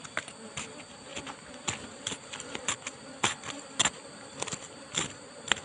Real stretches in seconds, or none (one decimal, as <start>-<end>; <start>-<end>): 0.0-5.6